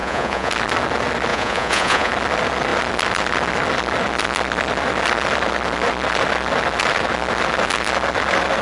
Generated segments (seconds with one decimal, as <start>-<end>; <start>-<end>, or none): 0.0-0.5; 1.3-2.1